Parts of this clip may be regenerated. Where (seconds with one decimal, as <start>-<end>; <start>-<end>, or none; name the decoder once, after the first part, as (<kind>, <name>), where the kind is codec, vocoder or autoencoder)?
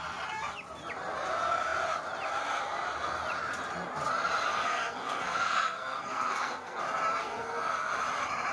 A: 4.5-6.8 (codec, SNAC); 7.2-7.9